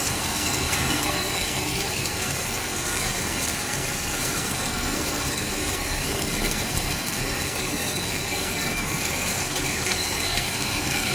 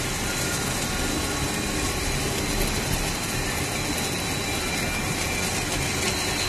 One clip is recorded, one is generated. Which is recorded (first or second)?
second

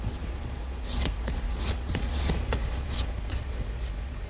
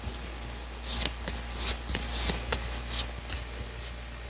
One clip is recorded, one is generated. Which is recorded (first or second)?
second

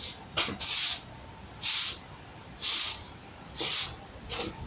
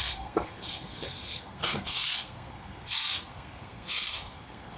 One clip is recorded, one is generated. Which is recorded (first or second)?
first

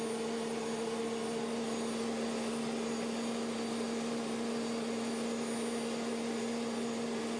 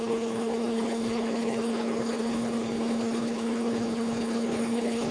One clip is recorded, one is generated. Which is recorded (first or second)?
first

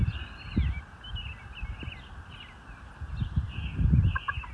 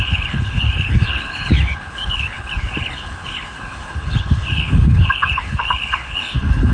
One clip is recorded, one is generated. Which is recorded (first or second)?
first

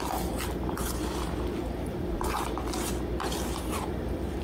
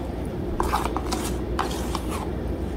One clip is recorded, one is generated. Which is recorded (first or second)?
first